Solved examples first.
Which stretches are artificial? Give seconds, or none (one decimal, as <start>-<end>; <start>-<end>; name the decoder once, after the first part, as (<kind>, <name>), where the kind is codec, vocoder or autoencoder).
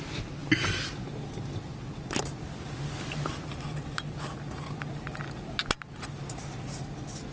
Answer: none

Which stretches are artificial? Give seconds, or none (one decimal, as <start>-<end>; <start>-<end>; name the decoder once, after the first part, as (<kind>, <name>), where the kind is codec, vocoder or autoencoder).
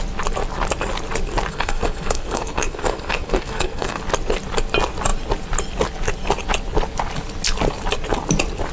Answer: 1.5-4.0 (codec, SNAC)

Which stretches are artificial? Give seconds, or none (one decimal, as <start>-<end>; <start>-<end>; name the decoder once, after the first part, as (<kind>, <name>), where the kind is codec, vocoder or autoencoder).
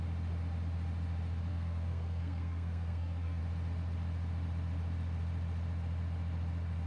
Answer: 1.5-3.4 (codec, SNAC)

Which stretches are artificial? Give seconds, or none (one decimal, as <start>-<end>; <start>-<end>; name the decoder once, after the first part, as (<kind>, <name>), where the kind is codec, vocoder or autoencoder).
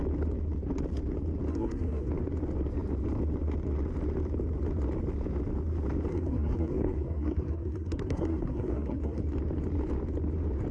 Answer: 1.5-2.1 (codec, SNAC); 6.1-9.2